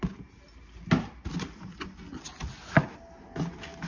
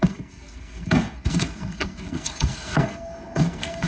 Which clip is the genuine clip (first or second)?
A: first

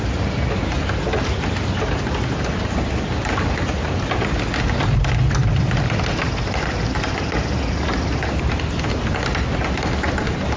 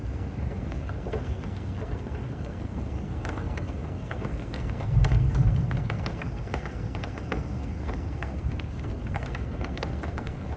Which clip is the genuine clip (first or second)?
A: first